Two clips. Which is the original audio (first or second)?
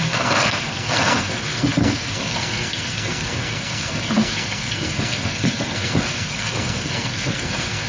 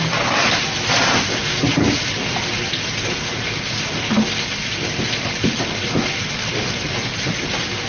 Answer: second